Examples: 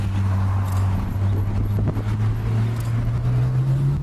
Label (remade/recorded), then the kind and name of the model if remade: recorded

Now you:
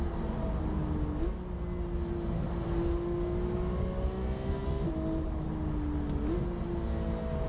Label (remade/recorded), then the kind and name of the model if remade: recorded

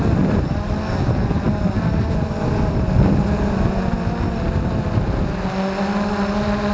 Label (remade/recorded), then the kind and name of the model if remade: recorded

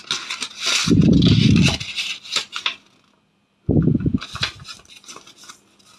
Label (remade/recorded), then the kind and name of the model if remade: recorded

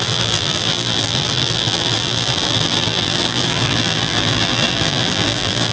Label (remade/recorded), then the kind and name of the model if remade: remade, vocoder, BigVGAN v2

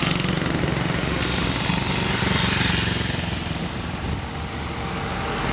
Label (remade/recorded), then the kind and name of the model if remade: recorded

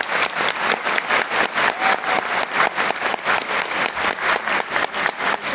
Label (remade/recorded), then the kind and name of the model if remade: recorded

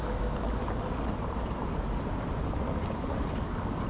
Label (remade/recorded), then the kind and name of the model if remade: recorded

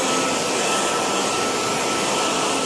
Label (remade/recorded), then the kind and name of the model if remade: recorded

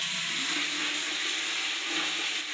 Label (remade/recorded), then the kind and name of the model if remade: recorded